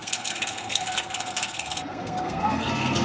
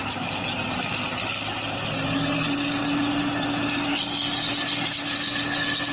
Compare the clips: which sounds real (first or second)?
second